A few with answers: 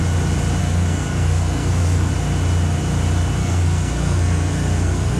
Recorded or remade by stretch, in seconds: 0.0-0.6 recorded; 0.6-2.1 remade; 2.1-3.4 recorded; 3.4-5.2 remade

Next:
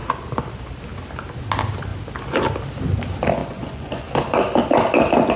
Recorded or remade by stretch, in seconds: 0.0-3.4 recorded; 3.4-4.1 remade; 4.1-5.4 recorded